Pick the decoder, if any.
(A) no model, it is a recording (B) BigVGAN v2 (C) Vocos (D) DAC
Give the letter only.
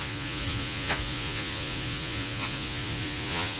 C